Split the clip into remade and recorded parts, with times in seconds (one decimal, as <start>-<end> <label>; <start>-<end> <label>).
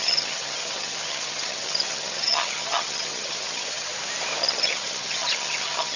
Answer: 0.0-3.9 remade; 3.9-4.4 recorded; 4.4-6.0 remade